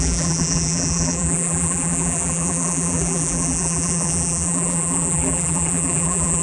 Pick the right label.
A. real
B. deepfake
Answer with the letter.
B